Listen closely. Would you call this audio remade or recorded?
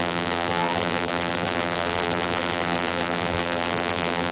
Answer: remade